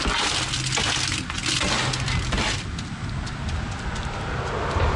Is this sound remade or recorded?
recorded